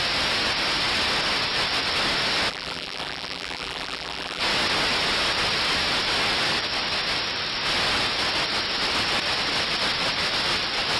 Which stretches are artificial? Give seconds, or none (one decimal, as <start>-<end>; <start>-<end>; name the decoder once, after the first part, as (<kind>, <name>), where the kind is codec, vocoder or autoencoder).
2.5-4.4 (vocoder, BigVGAN v2)